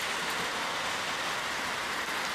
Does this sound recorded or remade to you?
recorded